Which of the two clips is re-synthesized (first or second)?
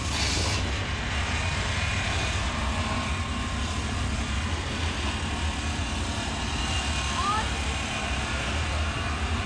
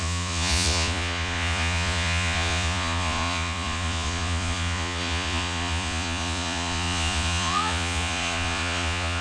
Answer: second